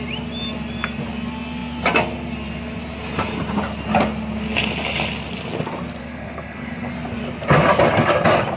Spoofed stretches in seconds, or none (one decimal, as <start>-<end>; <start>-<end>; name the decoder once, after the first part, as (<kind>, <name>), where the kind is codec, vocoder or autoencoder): 6.0-6.9 (codec, SNAC)